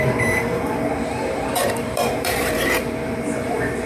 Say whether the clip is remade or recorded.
remade